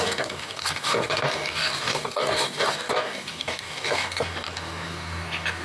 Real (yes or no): no